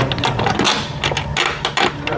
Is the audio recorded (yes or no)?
yes